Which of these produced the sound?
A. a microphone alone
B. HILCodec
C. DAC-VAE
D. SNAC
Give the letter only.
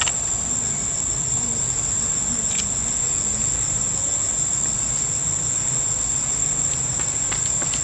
A